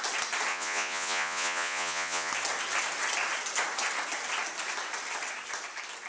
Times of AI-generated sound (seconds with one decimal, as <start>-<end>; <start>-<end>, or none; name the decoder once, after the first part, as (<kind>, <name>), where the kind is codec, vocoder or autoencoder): 0.5-2.3 (vocoder, Vocos)